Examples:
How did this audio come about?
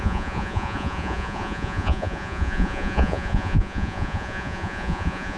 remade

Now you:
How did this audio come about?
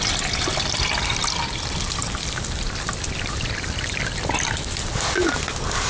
recorded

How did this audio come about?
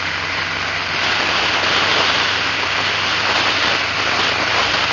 recorded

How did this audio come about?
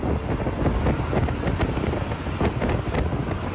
recorded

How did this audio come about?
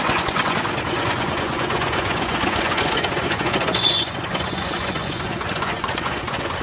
remade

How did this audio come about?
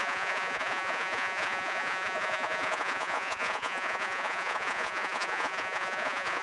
remade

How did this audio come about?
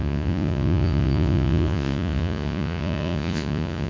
remade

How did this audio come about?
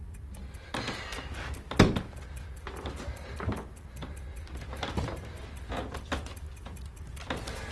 recorded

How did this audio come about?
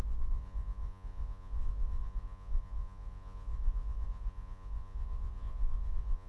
remade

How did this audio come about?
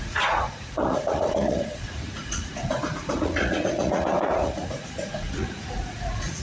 remade